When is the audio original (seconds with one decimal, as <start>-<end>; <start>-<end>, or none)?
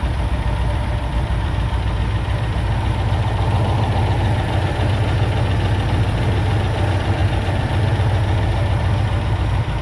1.8-7.2; 7.9-9.8